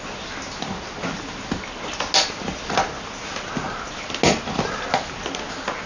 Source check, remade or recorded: recorded